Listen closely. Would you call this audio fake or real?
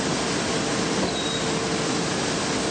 real